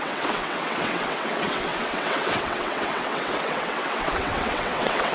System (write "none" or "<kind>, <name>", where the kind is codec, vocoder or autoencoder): vocoder, WaveNeXt